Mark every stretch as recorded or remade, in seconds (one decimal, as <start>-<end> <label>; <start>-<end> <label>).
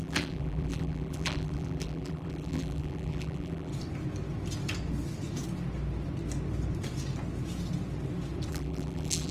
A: 0.0-3.7 remade; 3.7-8.5 recorded; 8.5-9.3 remade